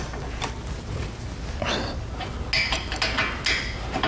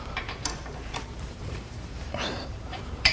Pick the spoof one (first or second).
second